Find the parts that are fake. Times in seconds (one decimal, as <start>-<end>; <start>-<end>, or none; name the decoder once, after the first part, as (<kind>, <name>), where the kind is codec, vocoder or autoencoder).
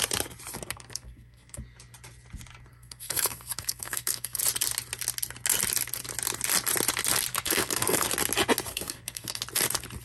0.5-1.6 (codec, SNAC); 2.7-4.4; 7.3-8.1; 8.7-9.4